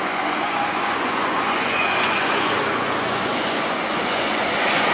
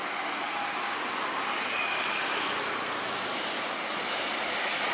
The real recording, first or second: second